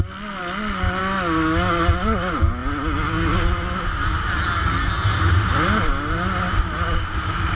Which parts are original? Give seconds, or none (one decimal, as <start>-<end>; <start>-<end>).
0.0-7.5